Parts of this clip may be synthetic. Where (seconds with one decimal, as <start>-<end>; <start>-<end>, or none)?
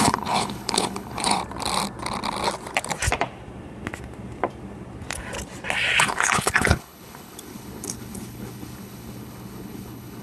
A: 0.0-1.4; 6.0-10.2